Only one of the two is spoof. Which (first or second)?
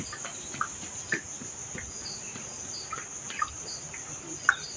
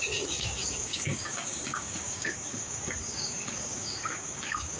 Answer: second